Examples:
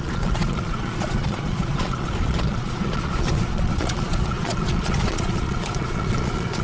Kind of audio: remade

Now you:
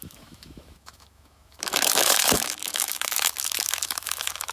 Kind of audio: remade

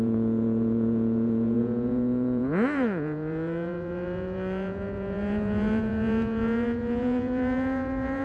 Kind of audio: remade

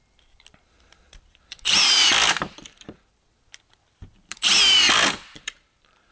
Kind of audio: remade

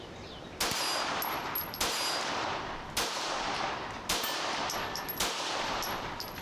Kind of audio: recorded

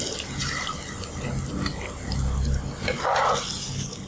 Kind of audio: recorded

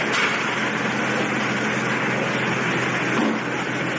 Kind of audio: recorded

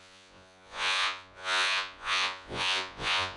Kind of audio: remade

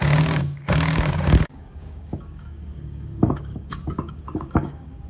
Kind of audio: remade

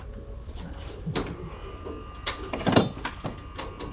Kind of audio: recorded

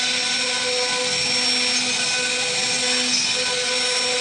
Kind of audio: recorded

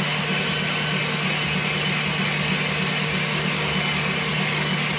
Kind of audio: recorded